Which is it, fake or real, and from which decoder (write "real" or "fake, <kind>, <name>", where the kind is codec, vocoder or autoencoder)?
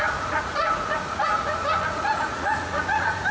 fake, vocoder, Vocos